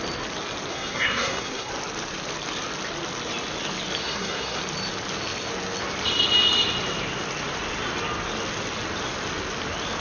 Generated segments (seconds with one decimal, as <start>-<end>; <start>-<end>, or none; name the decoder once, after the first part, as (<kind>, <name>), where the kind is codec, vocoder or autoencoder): 0.7-1.7 (codec, SNAC); 4.0-4.6